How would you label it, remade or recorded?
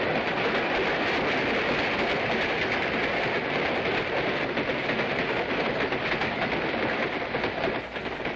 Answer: recorded